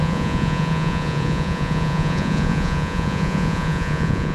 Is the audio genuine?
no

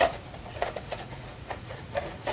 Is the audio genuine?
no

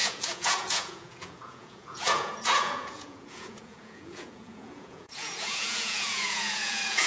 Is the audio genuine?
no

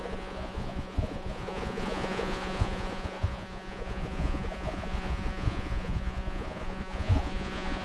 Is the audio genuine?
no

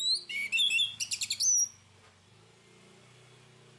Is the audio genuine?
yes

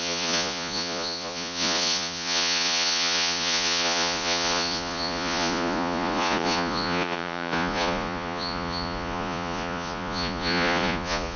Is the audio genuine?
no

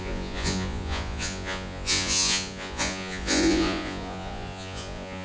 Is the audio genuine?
no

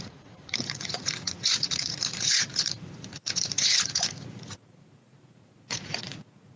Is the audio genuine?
no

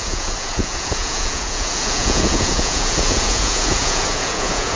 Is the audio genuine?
no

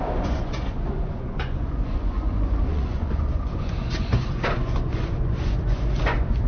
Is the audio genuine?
no